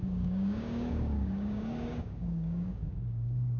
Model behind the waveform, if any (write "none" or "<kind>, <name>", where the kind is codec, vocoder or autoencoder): codec, DAC